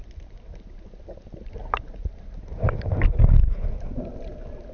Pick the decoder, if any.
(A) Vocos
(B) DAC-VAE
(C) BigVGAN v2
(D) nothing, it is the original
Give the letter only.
D